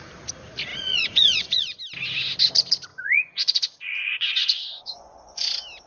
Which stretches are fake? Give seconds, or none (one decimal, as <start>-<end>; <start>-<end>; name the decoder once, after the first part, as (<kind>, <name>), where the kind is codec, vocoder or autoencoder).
0.7-1.8 (vocoder, Vocos); 2.9-5.5